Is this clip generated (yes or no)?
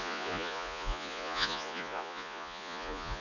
yes